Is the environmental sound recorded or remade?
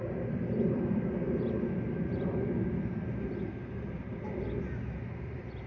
recorded